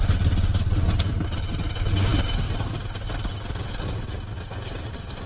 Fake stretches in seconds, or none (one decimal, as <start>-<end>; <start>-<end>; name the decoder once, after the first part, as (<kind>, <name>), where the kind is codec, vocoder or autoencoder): none